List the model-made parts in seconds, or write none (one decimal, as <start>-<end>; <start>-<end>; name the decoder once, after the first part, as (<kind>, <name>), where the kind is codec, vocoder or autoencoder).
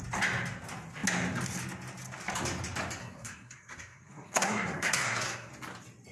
3.0-5.5 (codec, SNAC)